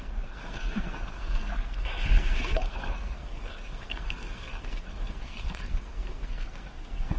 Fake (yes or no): yes